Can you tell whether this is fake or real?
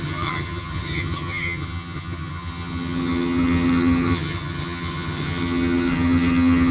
fake